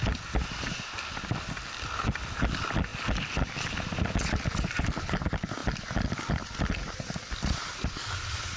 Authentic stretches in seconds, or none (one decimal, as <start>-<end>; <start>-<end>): 0.0-8.6